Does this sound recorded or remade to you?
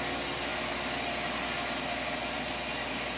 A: recorded